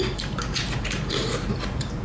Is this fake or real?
fake